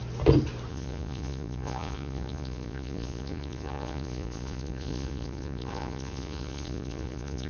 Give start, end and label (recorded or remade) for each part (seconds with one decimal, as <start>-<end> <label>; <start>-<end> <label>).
0.0-0.7 recorded; 0.7-7.5 remade